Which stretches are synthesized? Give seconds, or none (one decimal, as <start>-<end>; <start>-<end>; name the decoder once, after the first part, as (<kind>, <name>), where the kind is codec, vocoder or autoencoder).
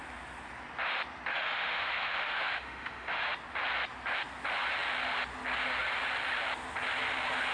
1.3-3.2 (autoencoder, DAC-VAE)